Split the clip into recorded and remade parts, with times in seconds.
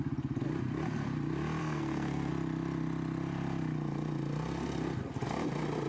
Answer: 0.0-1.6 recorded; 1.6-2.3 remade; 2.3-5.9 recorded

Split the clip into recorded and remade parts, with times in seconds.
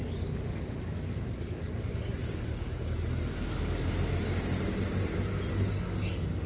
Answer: 0.0-3.9 remade; 3.9-5.5 recorded; 5.5-6.5 remade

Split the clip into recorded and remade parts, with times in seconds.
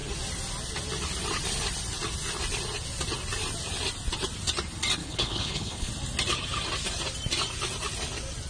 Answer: 0.0-5.0 recorded; 5.0-5.9 remade; 5.9-8.5 recorded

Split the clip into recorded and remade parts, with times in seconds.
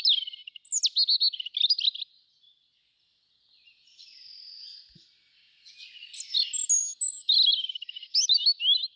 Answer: 0.0-9.0 recorded